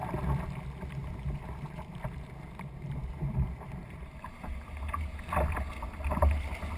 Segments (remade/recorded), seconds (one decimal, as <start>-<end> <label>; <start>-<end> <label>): 0.0-1.0 recorded; 1.0-5.1 remade; 5.1-6.8 recorded